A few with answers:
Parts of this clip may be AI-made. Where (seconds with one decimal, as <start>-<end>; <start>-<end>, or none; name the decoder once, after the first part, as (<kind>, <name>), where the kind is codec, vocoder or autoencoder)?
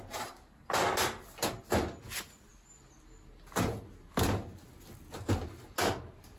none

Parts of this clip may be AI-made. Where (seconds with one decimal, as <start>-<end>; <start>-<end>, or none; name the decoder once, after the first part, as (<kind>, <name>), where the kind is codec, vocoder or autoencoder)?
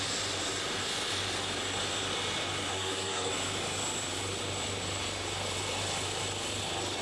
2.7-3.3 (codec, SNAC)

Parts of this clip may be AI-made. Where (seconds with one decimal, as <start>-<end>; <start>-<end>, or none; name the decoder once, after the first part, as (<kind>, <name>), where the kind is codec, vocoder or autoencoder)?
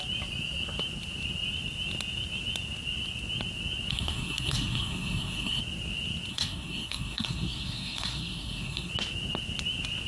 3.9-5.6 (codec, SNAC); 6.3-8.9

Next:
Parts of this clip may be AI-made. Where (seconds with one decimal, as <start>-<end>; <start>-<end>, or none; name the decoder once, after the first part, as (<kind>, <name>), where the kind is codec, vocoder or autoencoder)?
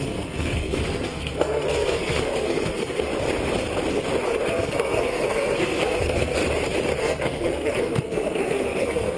0.0-3.1 (codec, SNAC); 4.5-6.4; 7.0-9.2